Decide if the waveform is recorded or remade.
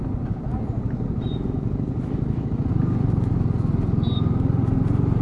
recorded